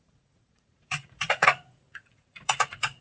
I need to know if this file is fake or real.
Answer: fake